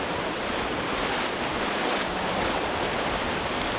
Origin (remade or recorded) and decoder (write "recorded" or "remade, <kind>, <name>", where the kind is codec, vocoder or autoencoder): remade, vocoder, BigVGAN v2